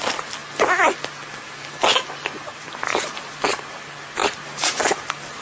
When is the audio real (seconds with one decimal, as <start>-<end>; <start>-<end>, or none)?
0.0-5.4

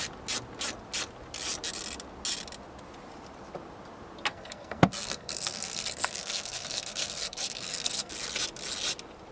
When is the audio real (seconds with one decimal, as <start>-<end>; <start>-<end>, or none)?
0.0-4.3; 8.1-9.3

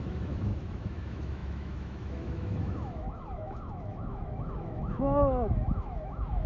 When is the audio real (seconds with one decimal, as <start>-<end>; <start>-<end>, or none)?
none

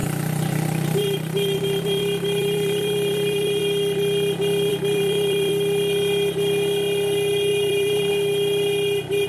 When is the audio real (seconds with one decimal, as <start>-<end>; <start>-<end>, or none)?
2.0-2.4; 3.6-4.7; 5.5-7.5; 8.1-9.3

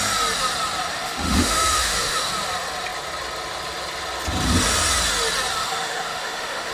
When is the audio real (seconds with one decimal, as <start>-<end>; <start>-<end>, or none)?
0.0-0.9; 2.3-5.6

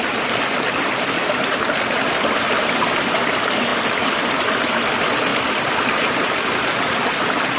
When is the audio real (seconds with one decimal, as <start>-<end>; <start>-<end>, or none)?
none

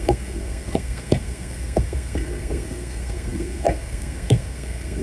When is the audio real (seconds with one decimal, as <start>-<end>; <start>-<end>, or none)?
none

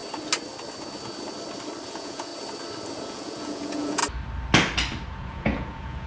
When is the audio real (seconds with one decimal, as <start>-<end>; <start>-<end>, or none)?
0.0-1.9; 2.3-3.0; 4.0-5.1